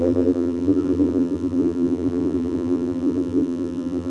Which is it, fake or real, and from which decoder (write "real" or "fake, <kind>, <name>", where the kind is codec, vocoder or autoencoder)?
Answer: fake, vocoder, BigVGAN v2